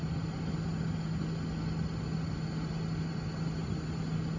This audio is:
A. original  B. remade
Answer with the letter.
A